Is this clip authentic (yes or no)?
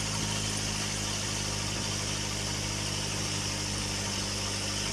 yes